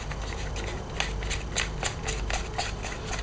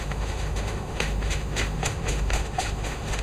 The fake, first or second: second